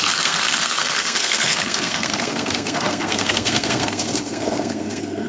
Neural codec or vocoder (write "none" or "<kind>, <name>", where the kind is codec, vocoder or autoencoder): codec, SNAC